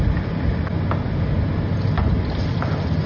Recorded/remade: recorded